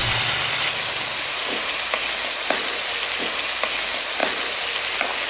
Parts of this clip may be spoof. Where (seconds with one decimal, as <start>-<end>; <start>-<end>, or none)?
none